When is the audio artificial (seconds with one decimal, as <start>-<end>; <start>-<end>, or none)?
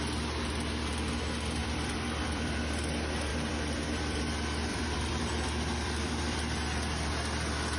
1.6-2.6; 3.3-4.2; 4.7-6.4